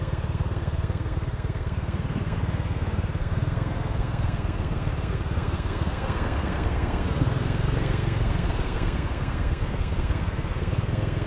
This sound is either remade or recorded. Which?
remade